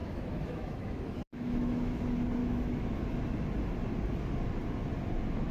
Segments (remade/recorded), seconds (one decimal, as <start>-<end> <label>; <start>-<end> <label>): 0.0-2.0 remade; 2.0-2.4 recorded; 2.4-3.0 remade; 3.0-5.5 recorded